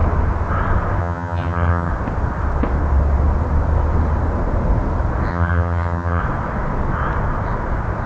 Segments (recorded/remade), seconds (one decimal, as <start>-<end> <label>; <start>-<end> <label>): 0.0-1.0 recorded; 1.0-1.9 remade; 1.9-5.3 recorded; 5.3-6.2 remade; 6.2-8.1 recorded